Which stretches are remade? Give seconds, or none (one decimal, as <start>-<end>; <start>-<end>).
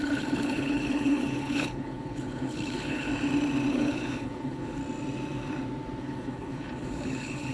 0.0-3.1; 3.7-4.8; 6.0-7.5